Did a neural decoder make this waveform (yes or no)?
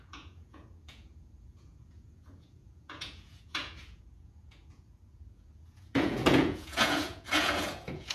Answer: yes